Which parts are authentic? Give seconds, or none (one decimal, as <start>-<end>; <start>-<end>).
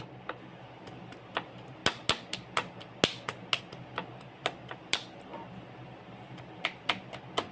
1.8-3.6